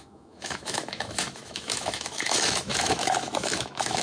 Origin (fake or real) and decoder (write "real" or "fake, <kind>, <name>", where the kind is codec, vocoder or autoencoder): fake, autoencoder, DAC-VAE